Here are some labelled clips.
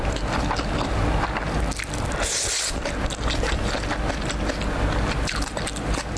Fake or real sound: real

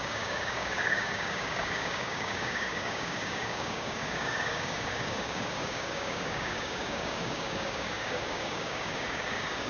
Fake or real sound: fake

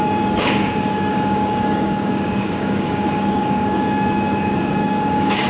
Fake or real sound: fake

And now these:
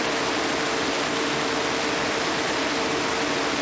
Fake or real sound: real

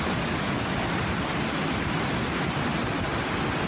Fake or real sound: real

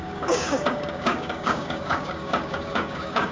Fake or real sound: fake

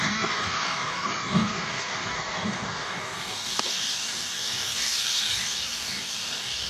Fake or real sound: fake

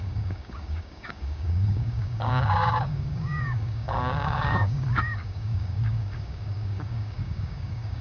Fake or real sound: fake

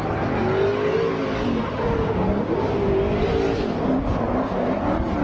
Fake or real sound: real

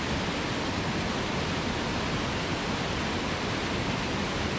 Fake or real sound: real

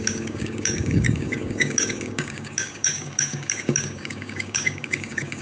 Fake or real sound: fake